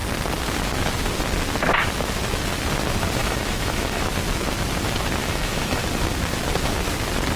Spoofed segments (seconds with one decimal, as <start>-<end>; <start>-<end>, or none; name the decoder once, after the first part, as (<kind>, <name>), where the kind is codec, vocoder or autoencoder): 3.2-4.0 (autoencoder, DAC-VAE); 5.2-5.8